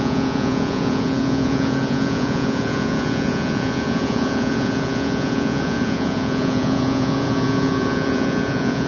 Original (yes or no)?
no